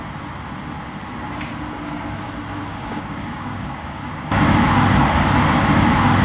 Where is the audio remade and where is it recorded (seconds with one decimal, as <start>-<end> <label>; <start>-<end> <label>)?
0.0-2.7 recorded; 2.7-4.4 remade; 4.4-6.2 recorded